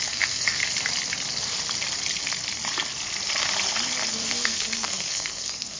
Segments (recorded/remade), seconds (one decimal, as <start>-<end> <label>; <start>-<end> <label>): 0.0-0.6 remade; 0.6-4.1 recorded; 4.1-5.8 remade